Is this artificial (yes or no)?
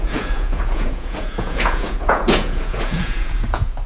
yes